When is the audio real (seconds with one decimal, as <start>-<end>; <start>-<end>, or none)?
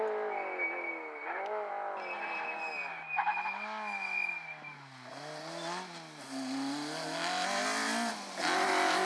0.0-9.0